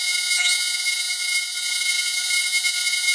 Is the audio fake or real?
fake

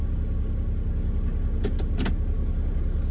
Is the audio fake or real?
real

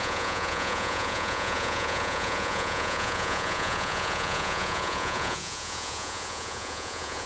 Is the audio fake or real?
fake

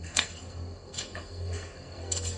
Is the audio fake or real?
fake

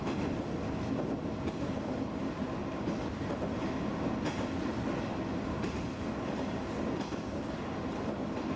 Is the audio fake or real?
real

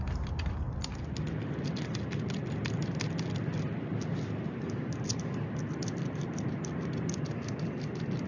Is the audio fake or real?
real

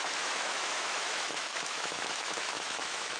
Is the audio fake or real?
fake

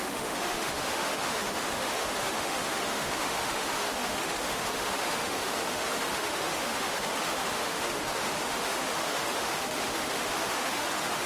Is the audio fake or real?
fake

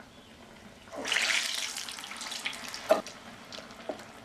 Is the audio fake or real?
real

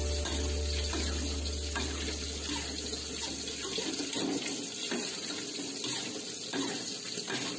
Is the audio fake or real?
real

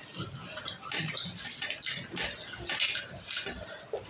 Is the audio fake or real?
real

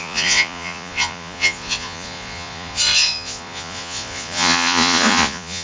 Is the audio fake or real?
fake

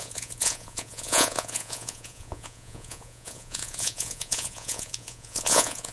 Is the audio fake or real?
fake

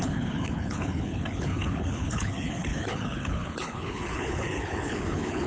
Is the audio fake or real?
fake